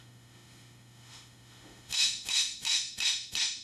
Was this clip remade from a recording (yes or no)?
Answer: yes